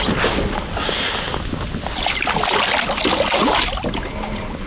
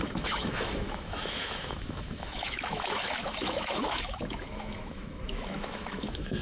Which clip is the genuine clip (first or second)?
first